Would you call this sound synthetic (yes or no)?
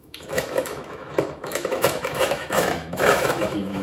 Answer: yes